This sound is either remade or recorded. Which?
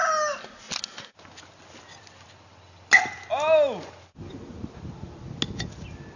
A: recorded